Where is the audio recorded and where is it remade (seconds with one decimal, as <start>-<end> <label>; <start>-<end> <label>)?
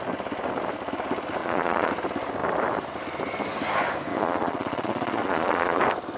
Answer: 0.0-1.4 recorded; 1.4-1.9 remade; 1.9-4.1 recorded; 4.1-5.8 remade; 5.8-6.2 recorded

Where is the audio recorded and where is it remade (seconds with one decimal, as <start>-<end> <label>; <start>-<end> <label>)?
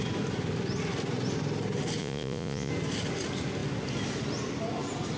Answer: 0.0-2.0 recorded; 2.0-2.7 remade; 2.7-5.2 recorded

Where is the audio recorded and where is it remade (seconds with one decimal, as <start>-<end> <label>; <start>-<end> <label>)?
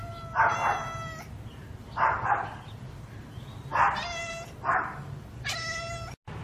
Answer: 0.0-6.4 recorded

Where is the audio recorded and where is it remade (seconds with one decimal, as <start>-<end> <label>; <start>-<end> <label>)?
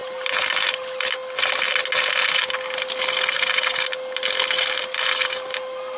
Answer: 0.0-6.0 recorded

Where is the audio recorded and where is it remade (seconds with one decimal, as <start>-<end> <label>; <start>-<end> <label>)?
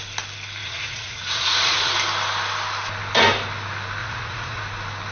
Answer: 0.0-0.6 recorded; 0.6-1.9 remade; 1.9-4.0 recorded; 4.0-4.6 remade; 4.6-5.1 recorded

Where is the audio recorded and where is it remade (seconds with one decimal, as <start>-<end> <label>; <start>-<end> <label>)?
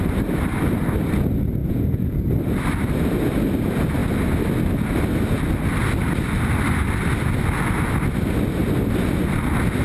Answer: 0.0-1.6 recorded; 1.6-2.3 remade; 2.3-9.8 recorded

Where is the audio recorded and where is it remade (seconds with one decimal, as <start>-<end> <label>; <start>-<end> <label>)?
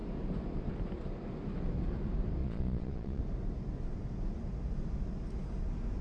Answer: 0.0-2.4 recorded; 2.4-3.2 remade; 3.2-6.0 recorded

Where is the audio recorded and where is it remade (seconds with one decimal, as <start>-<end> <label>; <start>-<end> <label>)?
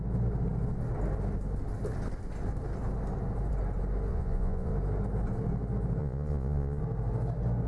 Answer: 0.0-4.1 recorded; 4.1-4.7 remade; 4.7-6.0 recorded; 6.0-6.8 remade; 6.8-7.7 recorded